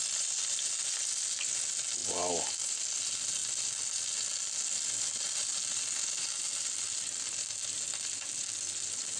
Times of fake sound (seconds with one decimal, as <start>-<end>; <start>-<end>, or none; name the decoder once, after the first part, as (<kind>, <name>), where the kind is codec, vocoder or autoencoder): none